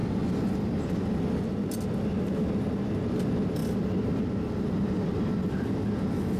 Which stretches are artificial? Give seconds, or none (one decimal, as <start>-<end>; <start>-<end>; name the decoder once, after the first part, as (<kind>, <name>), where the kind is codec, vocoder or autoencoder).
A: none